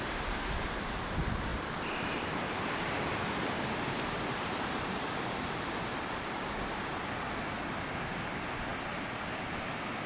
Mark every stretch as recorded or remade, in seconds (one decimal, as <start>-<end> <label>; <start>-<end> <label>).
0.0-1.5 recorded; 1.5-6.2 remade; 6.2-10.1 recorded